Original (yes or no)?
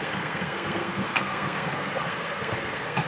no